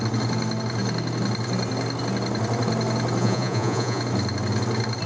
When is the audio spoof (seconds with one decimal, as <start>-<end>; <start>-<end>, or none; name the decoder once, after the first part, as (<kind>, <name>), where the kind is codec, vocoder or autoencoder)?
3.2-4.0 (vocoder, Vocos)